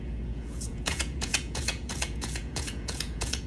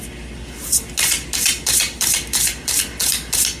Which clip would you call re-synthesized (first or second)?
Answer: first